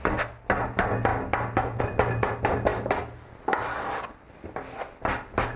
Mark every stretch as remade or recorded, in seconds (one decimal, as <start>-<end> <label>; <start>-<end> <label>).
0.0-5.6 recorded